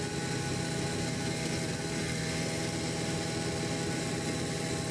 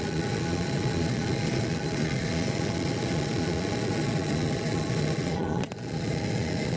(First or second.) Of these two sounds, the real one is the first